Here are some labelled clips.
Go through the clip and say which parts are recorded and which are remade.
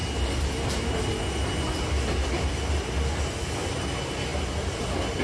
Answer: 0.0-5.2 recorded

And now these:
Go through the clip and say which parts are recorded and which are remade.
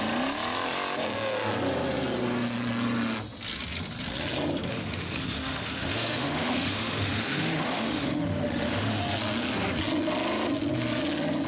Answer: 0.0-4.7 recorded; 4.7-9.0 remade; 9.0-11.5 recorded